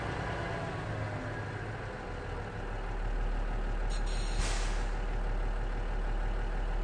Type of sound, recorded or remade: recorded